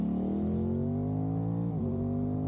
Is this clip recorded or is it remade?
recorded